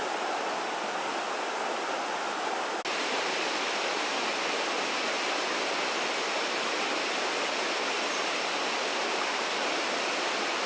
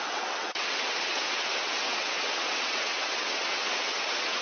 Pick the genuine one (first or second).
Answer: first